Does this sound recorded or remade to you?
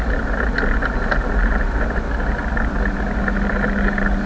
recorded